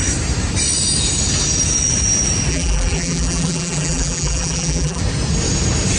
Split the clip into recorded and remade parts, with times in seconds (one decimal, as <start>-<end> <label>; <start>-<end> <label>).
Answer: 0.0-2.5 recorded; 2.5-5.0 remade; 5.0-6.0 recorded